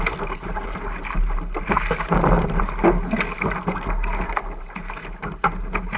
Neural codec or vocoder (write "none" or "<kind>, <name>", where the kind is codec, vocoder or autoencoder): none